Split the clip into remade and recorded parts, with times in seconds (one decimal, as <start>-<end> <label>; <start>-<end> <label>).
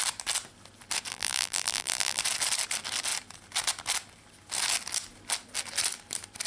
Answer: 0.0-1.1 recorded; 1.1-2.2 remade; 2.2-6.5 recorded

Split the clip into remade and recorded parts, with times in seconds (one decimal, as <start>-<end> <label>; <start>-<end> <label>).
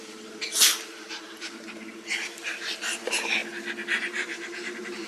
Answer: 0.0-3.4 remade; 3.4-4.0 recorded; 4.0-5.1 remade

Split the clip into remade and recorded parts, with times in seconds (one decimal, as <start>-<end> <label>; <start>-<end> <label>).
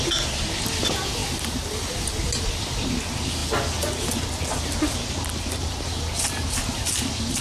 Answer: 0.0-3.4 recorded; 3.4-5.8 remade; 5.8-7.4 recorded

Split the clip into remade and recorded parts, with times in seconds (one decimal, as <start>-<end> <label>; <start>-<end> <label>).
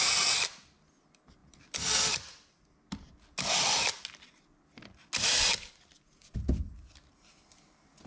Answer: 0.0-6.2 recorded; 6.2-7.0 remade; 7.0-8.1 recorded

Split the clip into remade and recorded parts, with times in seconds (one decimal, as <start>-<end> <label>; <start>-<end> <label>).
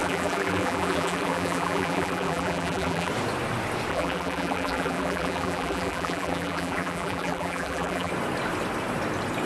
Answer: 0.0-3.1 remade; 3.1-3.9 recorded; 3.9-8.1 remade; 8.1-9.5 recorded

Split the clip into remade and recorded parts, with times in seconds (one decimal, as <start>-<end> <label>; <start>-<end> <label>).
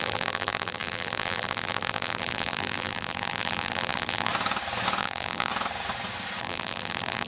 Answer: 0.0-4.3 remade; 4.3-5.0 recorded; 5.0-5.5 remade; 5.5-6.4 recorded; 6.4-7.3 remade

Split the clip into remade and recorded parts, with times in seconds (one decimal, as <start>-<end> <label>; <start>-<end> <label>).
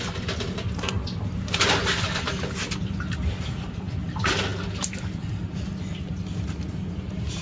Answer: 0.0-7.4 recorded